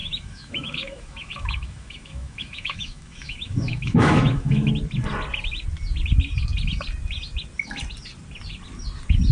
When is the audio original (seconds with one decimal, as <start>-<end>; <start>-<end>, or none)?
4.7-9.3